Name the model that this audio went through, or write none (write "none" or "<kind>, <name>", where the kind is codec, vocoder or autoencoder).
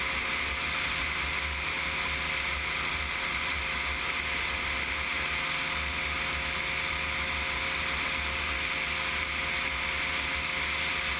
none